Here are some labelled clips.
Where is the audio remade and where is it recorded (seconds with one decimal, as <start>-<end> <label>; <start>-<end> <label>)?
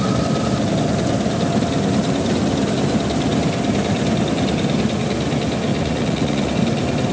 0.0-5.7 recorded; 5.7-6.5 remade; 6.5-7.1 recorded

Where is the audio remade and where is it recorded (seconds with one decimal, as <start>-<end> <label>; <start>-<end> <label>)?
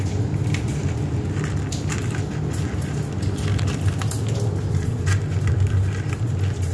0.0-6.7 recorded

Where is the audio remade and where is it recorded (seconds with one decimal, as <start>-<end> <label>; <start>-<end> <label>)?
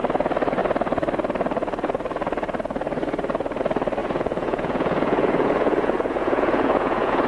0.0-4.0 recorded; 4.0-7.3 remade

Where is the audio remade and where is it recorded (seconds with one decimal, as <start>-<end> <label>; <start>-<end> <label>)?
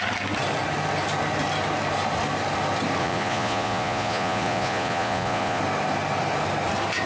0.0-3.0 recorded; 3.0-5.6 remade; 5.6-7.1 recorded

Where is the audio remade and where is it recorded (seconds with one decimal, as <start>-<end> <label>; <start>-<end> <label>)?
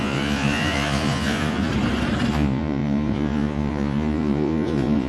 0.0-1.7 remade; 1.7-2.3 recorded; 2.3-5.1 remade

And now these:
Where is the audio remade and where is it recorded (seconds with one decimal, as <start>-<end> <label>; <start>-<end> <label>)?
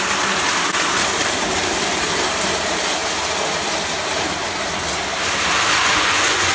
0.0-5.8 recorded; 5.8-6.5 remade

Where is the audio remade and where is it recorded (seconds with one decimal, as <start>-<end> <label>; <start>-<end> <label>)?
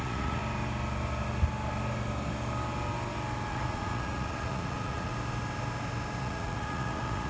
0.0-0.4 remade; 0.4-3.5 recorded; 3.5-5.1 remade; 5.1-6.2 recorded; 6.2-7.3 remade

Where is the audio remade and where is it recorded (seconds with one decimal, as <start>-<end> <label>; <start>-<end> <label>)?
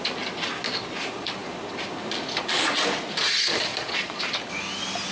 0.0-3.7 recorded; 3.7-4.2 remade; 4.2-5.1 recorded